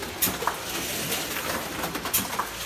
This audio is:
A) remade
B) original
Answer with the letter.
B